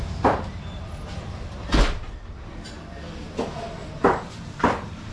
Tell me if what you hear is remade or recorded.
recorded